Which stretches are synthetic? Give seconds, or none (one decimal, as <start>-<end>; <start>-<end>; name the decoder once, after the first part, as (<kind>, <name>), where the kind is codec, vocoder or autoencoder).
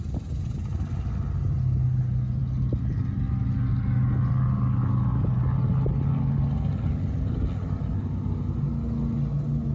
none